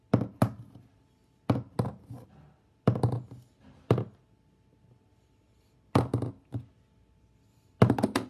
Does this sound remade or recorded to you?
recorded